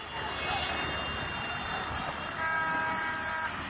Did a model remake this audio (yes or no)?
no